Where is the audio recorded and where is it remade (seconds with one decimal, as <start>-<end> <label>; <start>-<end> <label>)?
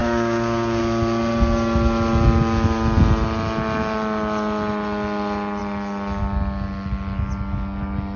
0.0-0.8 remade; 0.8-8.2 recorded